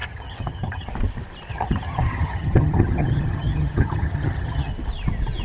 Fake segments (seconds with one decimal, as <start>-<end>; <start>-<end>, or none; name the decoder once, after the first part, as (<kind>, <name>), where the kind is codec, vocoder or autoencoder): 0.0-0.9 (vocoder, HiFi-GAN); 1.5-4.7